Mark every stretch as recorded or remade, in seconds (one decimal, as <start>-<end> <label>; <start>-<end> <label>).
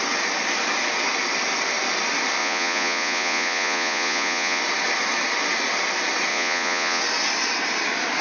0.0-2.4 recorded; 2.4-4.6 remade; 4.6-6.3 recorded; 6.3-7.0 remade; 7.0-8.2 recorded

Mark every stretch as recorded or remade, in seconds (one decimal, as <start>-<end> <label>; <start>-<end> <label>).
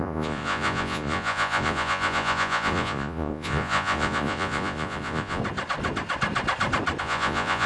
0.0-5.4 remade; 5.4-7.0 recorded; 7.0-7.7 remade